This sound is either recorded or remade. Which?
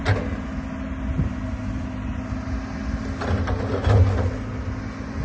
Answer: recorded